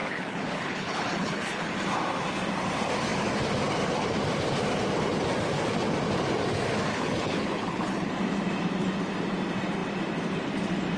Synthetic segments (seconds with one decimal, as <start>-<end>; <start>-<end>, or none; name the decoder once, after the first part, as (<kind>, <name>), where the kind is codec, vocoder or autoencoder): 0.0-1.7 (codec, HILCodec); 6.9-8.1